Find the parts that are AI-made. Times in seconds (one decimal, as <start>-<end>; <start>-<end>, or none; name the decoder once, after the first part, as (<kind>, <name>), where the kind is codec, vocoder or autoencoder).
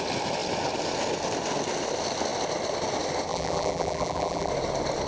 3.3-4.5 (vocoder, BigVGAN v2)